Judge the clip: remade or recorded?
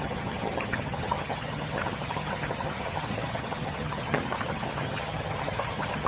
remade